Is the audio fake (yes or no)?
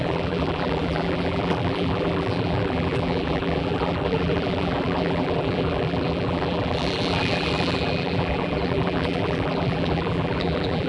yes